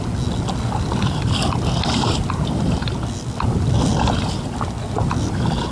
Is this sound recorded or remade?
recorded